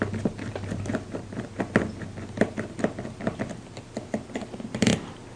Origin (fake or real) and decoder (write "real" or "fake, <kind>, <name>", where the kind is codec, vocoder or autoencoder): real